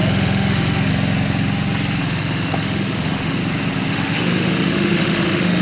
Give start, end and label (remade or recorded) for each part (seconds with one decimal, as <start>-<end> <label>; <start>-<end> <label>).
0.0-0.9 remade; 0.9-2.0 recorded; 2.0-3.4 remade; 3.4-3.9 recorded; 3.9-5.6 remade